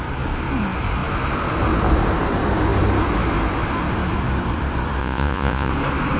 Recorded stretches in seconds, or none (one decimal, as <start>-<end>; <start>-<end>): 0.0-5.0; 5.7-6.2

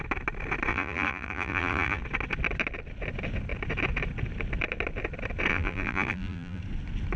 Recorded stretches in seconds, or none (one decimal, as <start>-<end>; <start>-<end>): 0.0-0.7; 2.0-5.5; 6.6-7.2

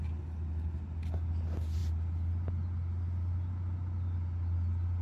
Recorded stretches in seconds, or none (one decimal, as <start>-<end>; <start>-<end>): 0.0-5.0